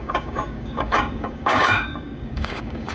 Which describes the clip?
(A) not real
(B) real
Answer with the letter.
A